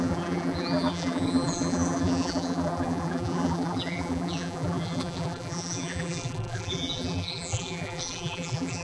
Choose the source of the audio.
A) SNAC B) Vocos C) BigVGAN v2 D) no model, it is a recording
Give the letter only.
C